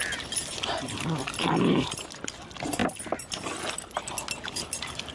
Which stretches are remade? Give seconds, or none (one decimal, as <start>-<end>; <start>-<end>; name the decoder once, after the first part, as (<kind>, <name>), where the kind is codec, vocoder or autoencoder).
none